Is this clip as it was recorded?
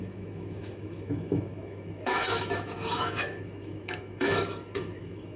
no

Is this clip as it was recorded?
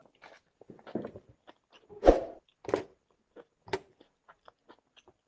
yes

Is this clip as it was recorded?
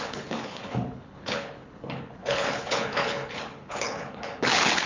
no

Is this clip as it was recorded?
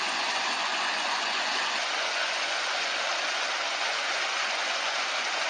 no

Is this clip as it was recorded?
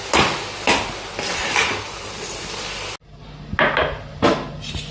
yes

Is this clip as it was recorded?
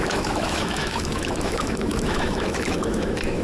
no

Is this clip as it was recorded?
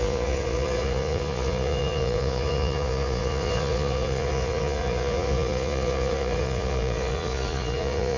no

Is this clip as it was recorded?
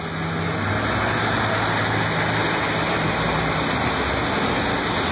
yes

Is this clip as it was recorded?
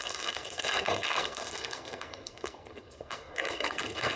no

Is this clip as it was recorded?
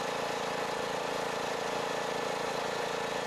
yes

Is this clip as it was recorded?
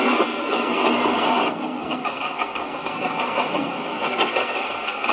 no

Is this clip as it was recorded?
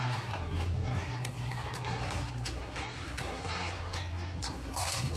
no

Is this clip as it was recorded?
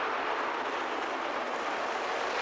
yes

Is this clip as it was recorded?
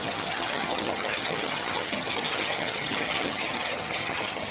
no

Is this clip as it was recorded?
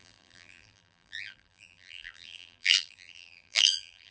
no